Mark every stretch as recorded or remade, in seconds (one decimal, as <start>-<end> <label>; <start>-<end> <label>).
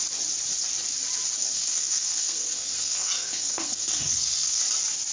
0.0-1.5 recorded; 1.5-4.6 remade; 4.6-5.1 recorded